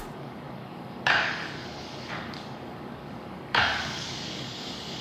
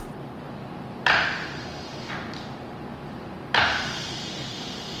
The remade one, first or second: first